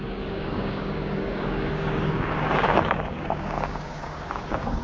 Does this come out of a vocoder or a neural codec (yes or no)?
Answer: yes